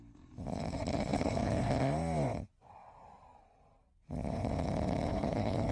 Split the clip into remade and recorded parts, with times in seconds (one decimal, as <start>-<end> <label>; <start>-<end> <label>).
0.0-1.1 recorded; 1.1-1.7 remade; 1.7-5.1 recorded; 5.1-5.7 remade